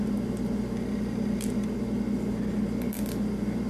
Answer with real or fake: real